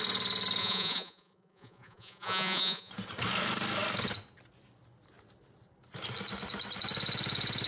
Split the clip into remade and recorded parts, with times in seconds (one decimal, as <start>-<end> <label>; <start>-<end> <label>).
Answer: 0.0-0.6 recorded; 0.6-2.9 remade; 2.9-7.7 recorded